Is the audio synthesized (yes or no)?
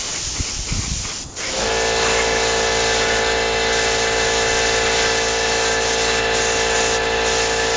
no